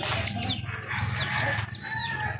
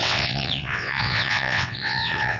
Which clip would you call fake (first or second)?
second